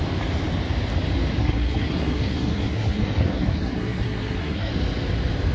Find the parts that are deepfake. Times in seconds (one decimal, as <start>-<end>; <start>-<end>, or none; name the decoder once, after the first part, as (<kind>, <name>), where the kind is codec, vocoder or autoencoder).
1.4-4.7 (codec, SNAC)